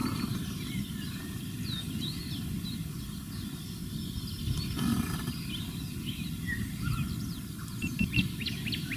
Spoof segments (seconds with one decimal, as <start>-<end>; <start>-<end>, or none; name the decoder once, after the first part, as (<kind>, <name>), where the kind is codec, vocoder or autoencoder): none